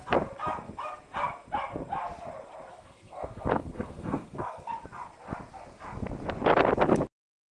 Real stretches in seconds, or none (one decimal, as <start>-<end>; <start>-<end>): 0.0-2.7; 4.7-7.5